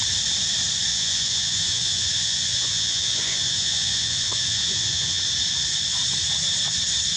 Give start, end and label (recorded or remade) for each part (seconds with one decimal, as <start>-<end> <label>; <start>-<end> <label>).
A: 0.0-0.9 recorded; 0.9-5.2 remade; 5.2-7.2 recorded